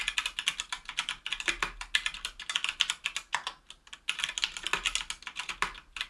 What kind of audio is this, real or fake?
real